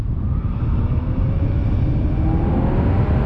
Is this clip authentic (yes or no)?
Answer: yes